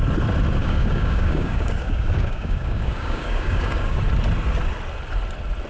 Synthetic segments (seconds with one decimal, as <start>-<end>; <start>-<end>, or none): 0.6-4.0